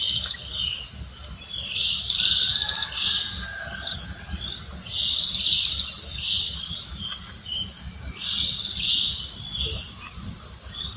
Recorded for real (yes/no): yes